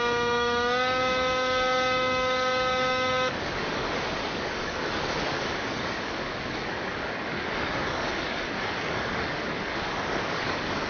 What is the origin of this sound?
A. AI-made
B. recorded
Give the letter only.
A